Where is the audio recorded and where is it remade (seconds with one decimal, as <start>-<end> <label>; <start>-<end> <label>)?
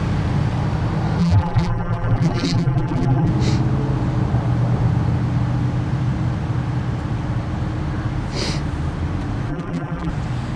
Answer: 0.0-1.2 recorded; 1.2-3.3 remade; 3.3-9.5 recorded; 9.5-10.1 remade; 10.1-10.6 recorded